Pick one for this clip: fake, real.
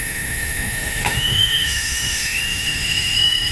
fake